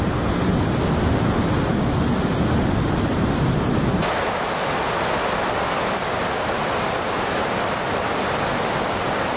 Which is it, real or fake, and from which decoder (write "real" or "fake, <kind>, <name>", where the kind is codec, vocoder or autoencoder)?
real